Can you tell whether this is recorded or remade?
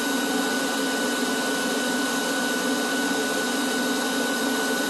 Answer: recorded